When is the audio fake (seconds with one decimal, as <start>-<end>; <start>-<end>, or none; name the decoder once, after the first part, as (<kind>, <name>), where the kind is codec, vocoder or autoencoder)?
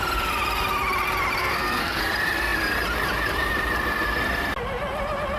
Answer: 1.4-2.0 (codec, SNAC)